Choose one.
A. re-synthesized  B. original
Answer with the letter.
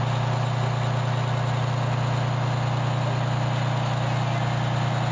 B